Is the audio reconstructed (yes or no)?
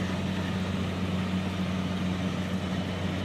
no